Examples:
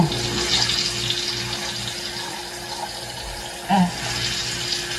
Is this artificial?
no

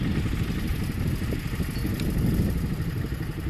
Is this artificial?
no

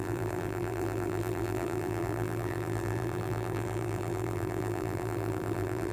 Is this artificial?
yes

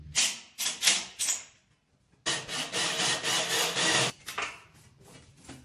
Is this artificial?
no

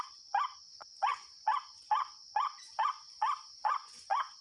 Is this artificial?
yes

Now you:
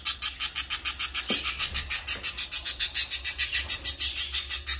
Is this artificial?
no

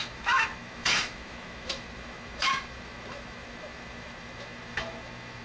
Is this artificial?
yes